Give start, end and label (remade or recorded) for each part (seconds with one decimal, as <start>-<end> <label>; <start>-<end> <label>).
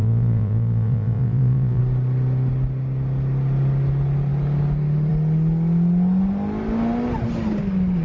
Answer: 0.0-1.8 remade; 1.8-8.0 recorded